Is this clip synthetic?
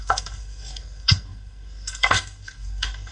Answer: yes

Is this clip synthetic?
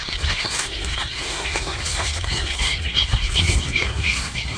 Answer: yes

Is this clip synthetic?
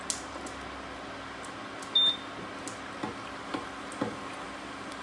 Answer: no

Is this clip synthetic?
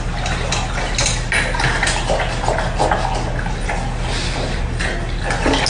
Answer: no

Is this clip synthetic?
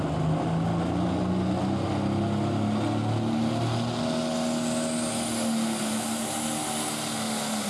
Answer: no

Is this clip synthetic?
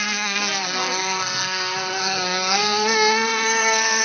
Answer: yes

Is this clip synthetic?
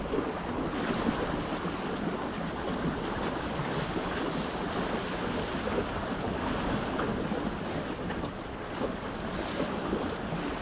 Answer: no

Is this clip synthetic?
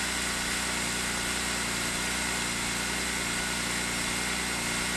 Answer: no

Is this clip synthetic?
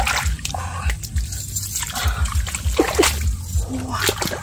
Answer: no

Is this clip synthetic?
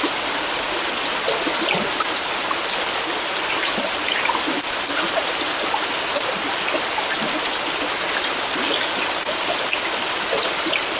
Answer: no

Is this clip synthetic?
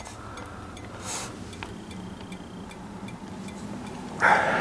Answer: no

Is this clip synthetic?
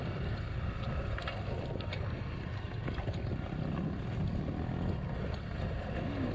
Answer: no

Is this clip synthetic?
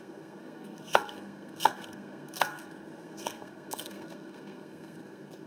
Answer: yes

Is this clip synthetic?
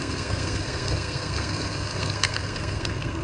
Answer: yes